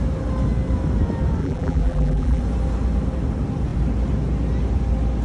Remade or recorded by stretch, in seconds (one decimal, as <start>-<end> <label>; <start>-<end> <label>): 0.0-1.4 recorded; 1.4-2.4 remade; 2.4-5.2 recorded